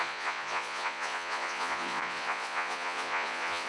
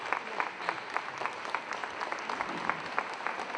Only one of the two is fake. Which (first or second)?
first